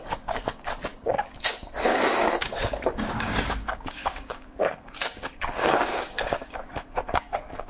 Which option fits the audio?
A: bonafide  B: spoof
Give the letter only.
B